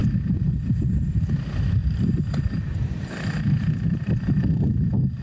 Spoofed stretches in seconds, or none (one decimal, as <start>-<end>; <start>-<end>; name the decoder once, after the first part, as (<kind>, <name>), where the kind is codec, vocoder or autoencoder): 1.8-5.2 (vocoder, BigVGAN v2)

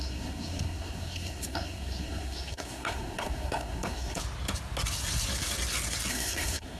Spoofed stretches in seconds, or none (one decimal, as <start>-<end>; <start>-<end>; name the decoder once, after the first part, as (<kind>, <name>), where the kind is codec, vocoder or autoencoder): 0.0-4.2 (codec, SNAC); 6.1-6.8

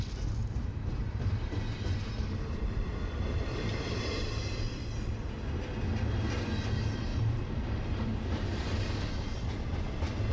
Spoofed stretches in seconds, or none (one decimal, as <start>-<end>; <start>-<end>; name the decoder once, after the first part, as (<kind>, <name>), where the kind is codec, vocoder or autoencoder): 0.4-4.8 (vocoder, BigVGAN v2); 7.1-9.5

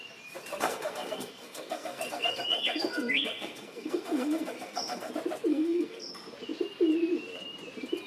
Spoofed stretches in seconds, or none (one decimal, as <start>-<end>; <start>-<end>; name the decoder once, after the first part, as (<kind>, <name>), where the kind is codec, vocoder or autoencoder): 0.5-5.1 (codec, SNAC); 5.5-6.1

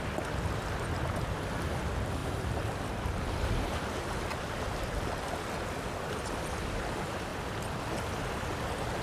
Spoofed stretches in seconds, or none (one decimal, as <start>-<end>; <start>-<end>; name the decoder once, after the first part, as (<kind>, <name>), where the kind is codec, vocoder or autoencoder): none

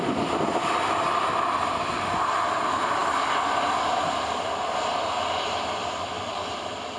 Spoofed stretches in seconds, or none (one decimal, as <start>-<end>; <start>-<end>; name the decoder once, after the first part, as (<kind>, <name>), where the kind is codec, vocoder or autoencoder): none

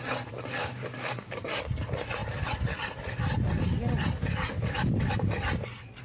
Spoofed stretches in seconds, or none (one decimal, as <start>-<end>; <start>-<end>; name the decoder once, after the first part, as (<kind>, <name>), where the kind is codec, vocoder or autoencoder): 0.6-1.4 (codec, DAC)

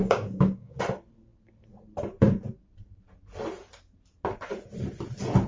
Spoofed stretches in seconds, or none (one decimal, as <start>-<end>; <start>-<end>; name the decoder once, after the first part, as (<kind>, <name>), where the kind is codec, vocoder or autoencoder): 0.0-0.8 (codec, DAC)